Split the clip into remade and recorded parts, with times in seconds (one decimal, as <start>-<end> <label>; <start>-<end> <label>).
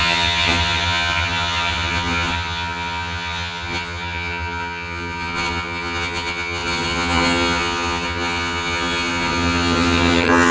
0.0-10.5 remade